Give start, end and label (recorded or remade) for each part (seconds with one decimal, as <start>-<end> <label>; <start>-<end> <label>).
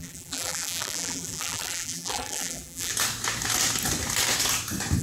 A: 0.0-2.9 remade; 2.9-5.0 recorded